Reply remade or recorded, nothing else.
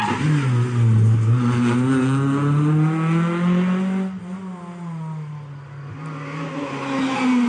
recorded